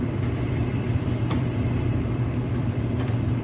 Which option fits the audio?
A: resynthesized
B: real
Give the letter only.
A